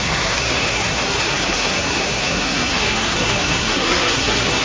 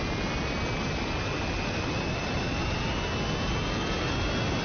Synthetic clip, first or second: first